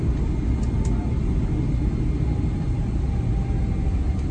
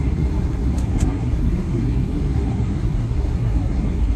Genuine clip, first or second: first